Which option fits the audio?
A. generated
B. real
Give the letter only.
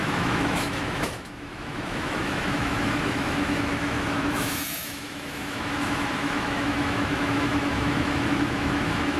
A